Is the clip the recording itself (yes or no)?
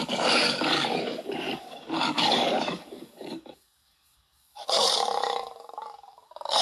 no